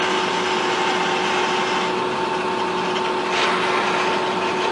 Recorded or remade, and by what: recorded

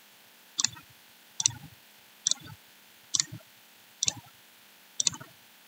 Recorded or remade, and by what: recorded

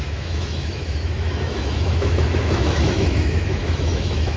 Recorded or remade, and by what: remade, autoencoder, DAC-VAE